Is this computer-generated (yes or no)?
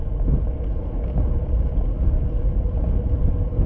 no